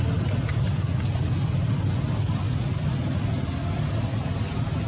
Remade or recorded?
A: recorded